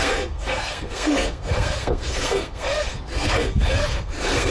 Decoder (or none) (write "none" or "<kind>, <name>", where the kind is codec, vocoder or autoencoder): codec, SNAC